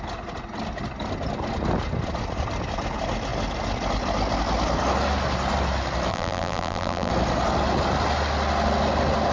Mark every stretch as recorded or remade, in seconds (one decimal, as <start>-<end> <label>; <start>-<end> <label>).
0.0-6.1 recorded; 6.1-7.1 remade; 7.1-9.3 recorded